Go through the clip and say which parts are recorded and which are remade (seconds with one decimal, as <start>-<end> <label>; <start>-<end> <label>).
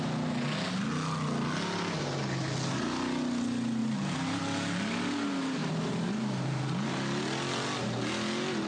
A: 0.0-3.8 recorded; 3.8-4.4 remade; 4.4-5.6 recorded; 5.6-6.9 remade; 6.9-8.7 recorded